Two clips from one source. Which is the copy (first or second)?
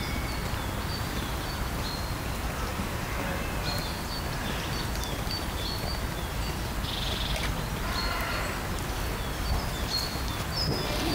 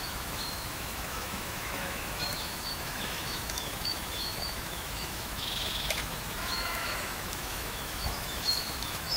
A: second